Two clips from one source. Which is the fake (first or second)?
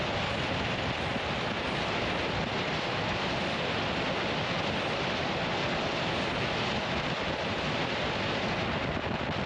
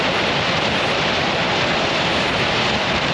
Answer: second